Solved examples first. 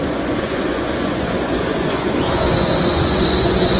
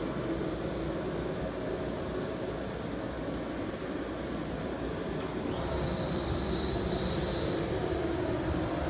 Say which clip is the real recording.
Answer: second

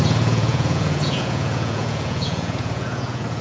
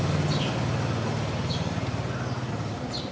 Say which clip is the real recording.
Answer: second